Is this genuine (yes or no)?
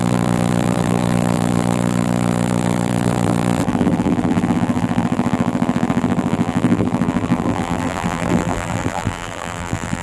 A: no